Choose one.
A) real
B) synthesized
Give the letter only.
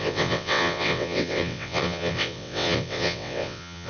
B